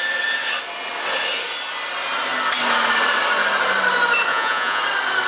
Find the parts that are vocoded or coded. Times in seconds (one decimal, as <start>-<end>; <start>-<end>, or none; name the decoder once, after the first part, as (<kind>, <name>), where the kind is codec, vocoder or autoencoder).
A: 4.3-4.8 (vocoder, Vocos)